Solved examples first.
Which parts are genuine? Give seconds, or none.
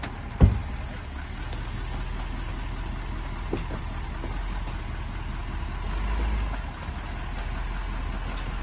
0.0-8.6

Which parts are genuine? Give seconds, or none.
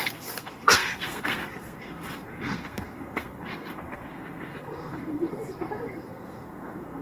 none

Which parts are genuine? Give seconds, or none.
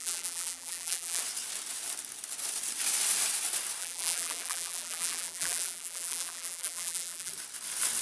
1.2-3.8; 7.3-8.0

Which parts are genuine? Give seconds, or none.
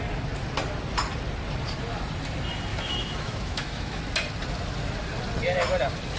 0.0-2.7; 4.0-6.2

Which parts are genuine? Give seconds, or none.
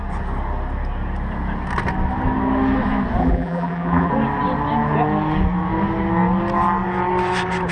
0.0-3.2; 4.1-7.7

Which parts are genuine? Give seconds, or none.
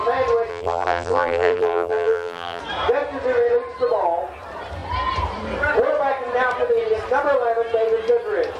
0.0-0.5; 2.6-8.6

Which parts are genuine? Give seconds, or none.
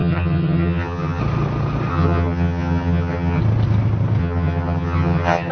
1.2-1.9; 3.4-4.2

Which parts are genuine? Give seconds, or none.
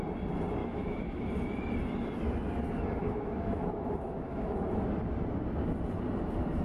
0.0-0.6; 1.3-3.0; 4.8-6.6